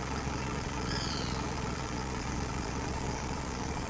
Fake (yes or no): yes